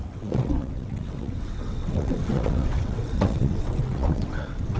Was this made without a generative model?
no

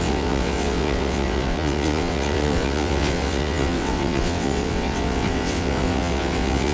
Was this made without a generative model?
no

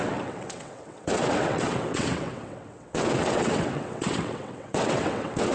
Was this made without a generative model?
no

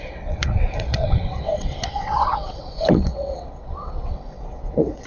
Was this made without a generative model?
no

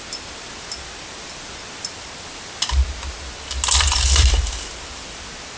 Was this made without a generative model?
yes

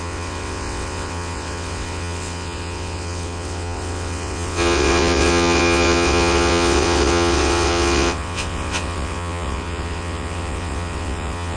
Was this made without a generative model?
no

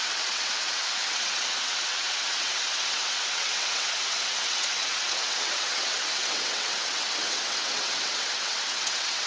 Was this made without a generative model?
no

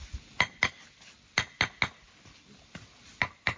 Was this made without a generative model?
yes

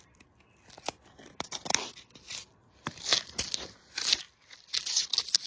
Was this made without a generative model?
yes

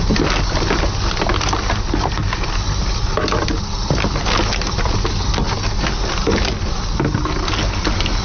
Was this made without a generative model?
yes